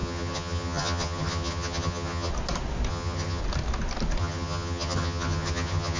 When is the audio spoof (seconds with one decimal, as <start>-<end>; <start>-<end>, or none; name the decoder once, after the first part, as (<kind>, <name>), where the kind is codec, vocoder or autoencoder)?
0.0-2.3 (vocoder, HiFi-GAN); 2.9-3.4; 4.2-6.0